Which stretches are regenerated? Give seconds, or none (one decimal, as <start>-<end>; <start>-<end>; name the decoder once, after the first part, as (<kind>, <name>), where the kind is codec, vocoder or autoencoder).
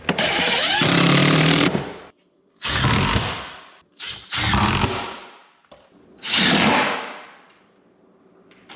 none